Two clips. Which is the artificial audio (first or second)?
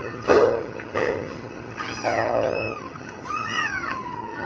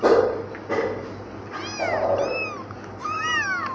first